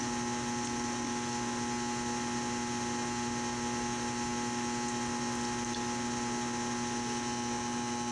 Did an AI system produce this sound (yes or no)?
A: no